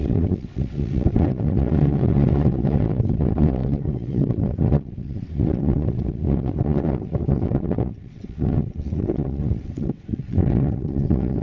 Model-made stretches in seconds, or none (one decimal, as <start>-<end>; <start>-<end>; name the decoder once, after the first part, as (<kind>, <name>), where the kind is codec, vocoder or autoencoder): 0.0-11.4 (vocoder, WaveNeXt)

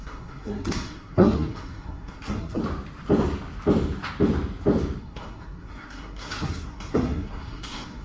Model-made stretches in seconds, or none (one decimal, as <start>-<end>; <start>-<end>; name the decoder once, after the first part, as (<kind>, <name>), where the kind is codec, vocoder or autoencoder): 0.0-2.6 (codec, SNAC); 5.0-8.0

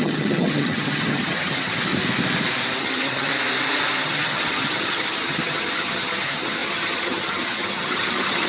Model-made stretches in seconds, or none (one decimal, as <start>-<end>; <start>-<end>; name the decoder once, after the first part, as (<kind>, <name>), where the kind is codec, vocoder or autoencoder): 0.0-1.9 (vocoder, HiFi-GAN); 2.8-3.3; 4.0-8.5

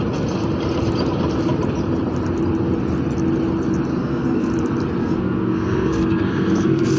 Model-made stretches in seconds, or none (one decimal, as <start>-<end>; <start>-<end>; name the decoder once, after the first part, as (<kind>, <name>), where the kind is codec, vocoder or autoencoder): 3.9-4.5 (codec, SNAC); 5.0-7.0

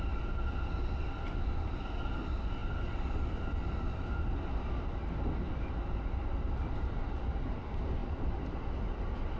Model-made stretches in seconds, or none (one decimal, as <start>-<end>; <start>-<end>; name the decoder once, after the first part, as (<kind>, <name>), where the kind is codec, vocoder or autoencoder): none